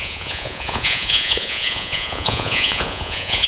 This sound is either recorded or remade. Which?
remade